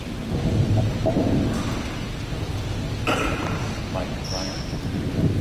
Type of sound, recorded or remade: recorded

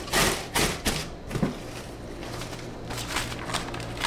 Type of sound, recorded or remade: recorded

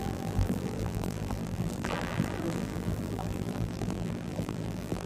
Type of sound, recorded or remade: remade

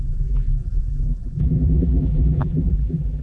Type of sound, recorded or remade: remade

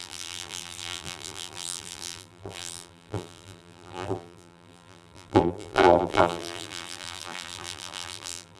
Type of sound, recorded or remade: remade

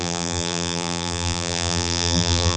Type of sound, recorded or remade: remade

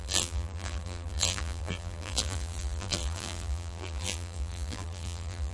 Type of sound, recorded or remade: remade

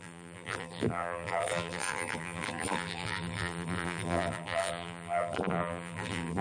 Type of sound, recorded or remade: remade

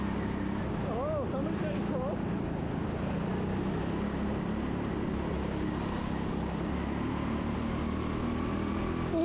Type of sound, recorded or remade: recorded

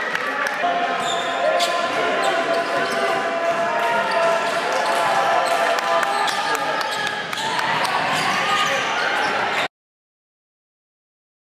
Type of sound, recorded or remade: recorded